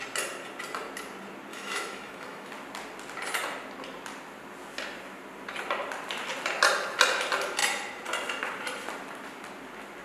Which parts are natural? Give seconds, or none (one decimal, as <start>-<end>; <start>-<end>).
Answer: 0.0-1.5; 2.5-10.0